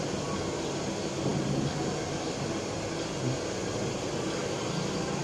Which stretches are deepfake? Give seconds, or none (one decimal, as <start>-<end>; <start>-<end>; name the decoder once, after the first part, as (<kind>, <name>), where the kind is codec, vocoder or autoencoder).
none